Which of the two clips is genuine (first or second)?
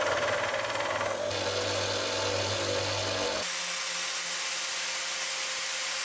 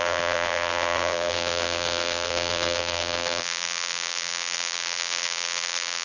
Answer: first